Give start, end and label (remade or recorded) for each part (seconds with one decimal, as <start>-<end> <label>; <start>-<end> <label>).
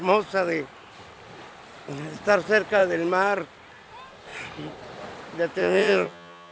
0.0-5.6 recorded; 5.6-6.5 remade